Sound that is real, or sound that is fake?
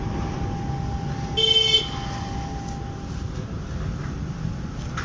real